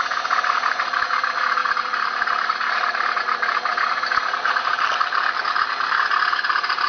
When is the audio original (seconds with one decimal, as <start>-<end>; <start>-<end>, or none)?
0.0-3.7; 5.4-6.9